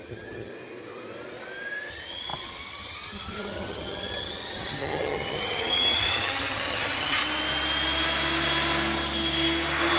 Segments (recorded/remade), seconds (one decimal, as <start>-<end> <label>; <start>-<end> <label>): 0.0-0.5 remade; 0.5-1.9 recorded; 1.9-7.2 remade; 7.2-10.0 recorded